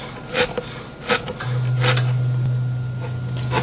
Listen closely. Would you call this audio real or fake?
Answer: real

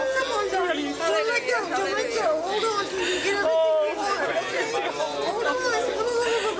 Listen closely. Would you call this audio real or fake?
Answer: real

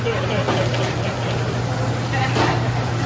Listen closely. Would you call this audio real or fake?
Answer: real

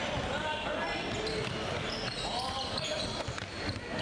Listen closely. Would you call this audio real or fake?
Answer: real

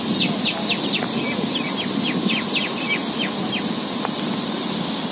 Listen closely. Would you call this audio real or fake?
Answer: real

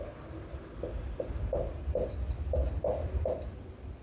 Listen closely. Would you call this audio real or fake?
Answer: real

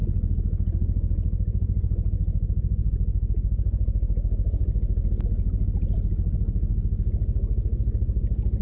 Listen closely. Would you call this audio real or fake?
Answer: real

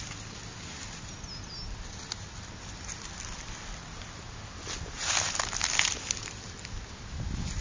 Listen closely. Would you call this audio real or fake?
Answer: real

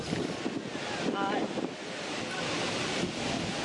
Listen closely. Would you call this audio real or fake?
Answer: real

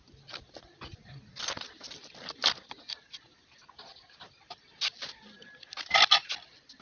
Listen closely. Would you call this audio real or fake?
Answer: real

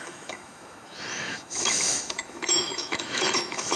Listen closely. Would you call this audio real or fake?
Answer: fake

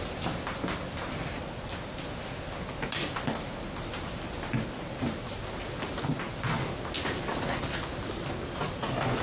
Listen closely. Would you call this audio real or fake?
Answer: real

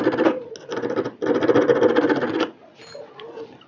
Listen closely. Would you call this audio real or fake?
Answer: real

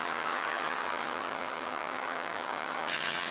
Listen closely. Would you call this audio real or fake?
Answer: fake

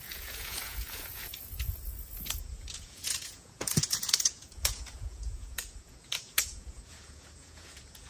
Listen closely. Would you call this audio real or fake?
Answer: fake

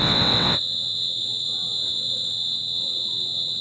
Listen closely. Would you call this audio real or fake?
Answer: fake